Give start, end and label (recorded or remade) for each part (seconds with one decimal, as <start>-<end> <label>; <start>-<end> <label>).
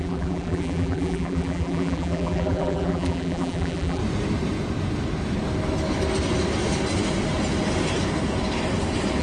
0.0-4.0 remade; 4.0-9.2 recorded